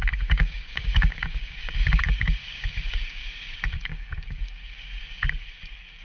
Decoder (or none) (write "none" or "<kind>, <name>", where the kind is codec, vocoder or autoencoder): codec, DAC